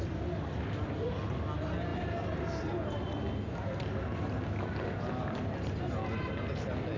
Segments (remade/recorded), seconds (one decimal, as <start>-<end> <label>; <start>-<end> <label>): 0.0-7.0 recorded